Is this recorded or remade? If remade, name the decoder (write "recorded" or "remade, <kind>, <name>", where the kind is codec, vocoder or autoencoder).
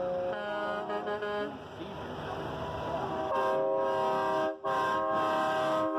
recorded